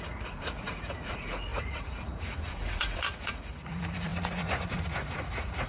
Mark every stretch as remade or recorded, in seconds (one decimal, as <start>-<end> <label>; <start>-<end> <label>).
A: 0.0-5.7 remade